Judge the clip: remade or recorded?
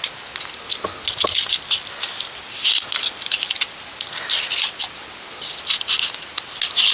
recorded